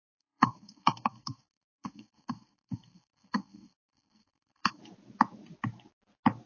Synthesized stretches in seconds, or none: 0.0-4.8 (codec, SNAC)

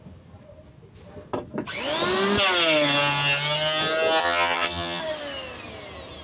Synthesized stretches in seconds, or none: 4.2-5.0 (vocoder, HiFi-GAN)

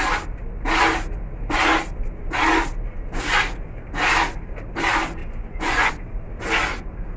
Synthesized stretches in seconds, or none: 5.2-5.9 (vocoder, Vocos)

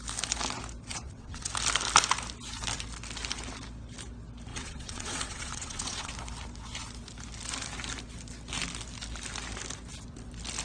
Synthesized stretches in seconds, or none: 0.9-1.5 (vocoder, WaveNeXt); 4.5-6.1

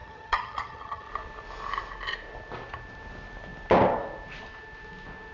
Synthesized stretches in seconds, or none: 0.0-1.1 (vocoder, HiFi-GAN)

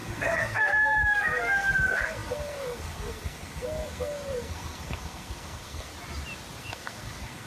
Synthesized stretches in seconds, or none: 0.0-5.9 (codec, SNAC); 6.6-7.5

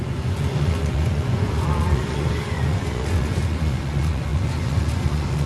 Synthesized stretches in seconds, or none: 0.0-5.5 (vocoder, Vocos)

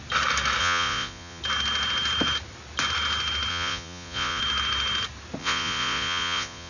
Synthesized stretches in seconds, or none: 0.6-1.4 (vocoder, Vocos); 3.5-4.4; 5.4-6.7